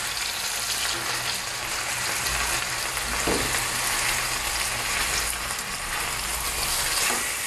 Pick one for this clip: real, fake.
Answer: real